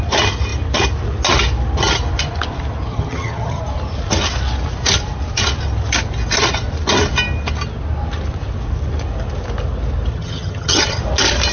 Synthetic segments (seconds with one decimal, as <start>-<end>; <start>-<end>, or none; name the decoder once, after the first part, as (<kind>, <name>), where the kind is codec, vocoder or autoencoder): 2.9-3.6 (vocoder, HiFi-GAN); 10.1-11.0